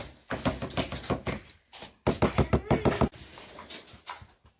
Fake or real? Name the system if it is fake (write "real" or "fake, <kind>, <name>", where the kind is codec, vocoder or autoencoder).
real